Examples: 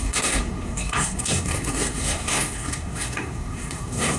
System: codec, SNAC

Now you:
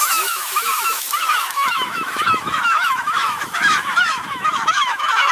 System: autoencoder, DAC-VAE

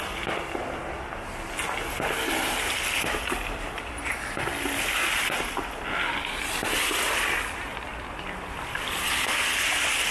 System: none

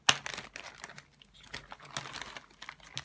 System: none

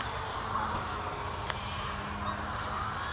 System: none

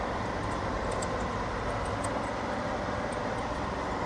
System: none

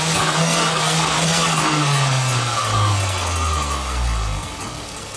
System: codec, SNAC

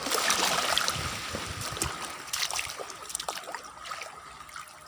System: vocoder, BigVGAN v2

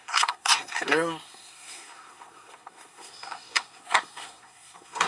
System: codec, SNAC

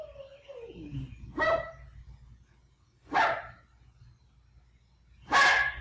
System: none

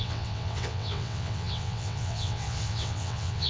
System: vocoder, WaveNeXt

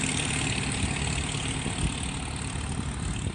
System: none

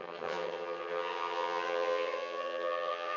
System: vocoder, HiFi-GAN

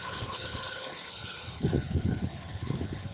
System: codec, HILCodec